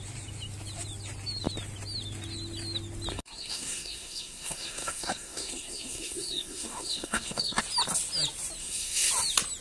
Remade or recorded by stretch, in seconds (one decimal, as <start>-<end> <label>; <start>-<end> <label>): 0.0-3.1 recorded; 3.1-7.6 remade; 7.6-8.6 recorded; 8.6-9.1 remade; 9.1-9.6 recorded